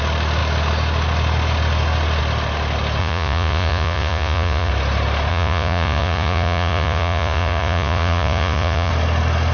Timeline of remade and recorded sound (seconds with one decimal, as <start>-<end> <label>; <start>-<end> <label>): 0.0-3.0 recorded; 3.0-4.7 remade; 4.7-5.3 recorded; 5.3-8.9 remade; 8.9-9.5 recorded